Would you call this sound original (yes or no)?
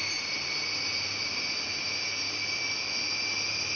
yes